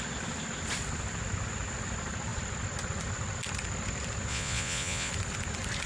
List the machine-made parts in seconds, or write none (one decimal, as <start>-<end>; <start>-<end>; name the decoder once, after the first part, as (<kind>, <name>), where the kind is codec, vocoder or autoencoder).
4.3-5.1 (vocoder, Vocos)